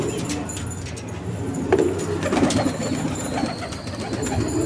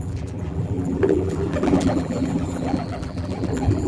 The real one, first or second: first